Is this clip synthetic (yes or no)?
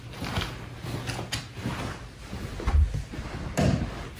no